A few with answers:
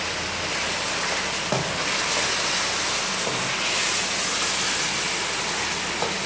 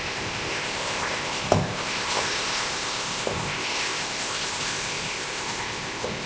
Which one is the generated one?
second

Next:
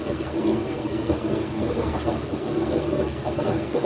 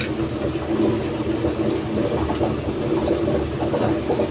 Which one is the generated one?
first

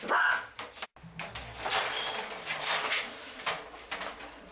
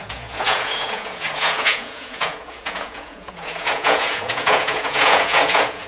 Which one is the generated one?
second